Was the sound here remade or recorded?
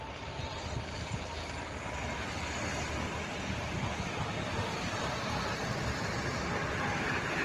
recorded